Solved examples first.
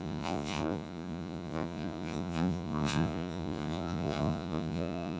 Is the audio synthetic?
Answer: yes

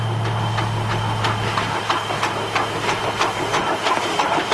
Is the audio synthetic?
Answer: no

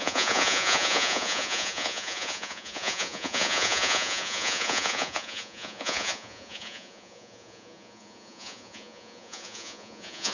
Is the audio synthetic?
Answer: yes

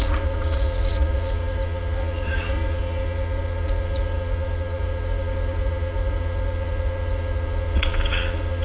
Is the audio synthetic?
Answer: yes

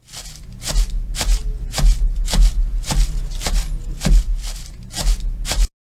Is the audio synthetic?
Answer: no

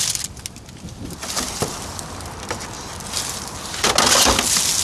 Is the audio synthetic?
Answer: no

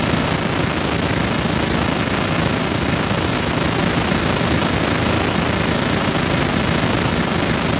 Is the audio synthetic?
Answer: no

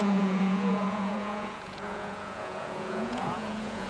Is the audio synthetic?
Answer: yes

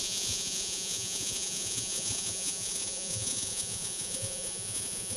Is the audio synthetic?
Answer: yes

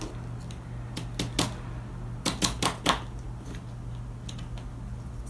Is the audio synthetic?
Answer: no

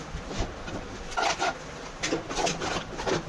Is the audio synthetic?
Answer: no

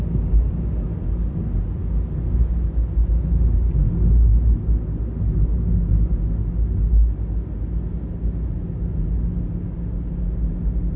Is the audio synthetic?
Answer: no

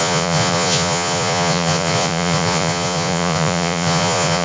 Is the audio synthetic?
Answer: yes